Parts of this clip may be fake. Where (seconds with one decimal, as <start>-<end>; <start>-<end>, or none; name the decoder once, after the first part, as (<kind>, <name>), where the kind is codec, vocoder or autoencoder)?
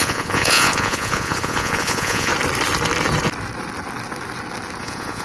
0.0-2.3 (vocoder, Vocos); 4.8-5.2